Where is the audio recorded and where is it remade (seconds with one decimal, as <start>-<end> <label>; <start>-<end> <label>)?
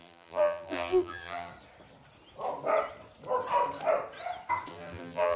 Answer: 0.0-1.5 remade; 1.5-4.7 recorded; 4.7-5.4 remade